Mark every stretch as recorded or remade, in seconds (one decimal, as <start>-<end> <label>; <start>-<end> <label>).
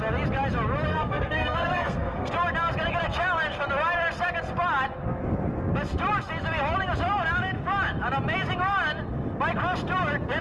0.0-0.9 recorded; 0.9-2.3 remade; 2.3-10.4 recorded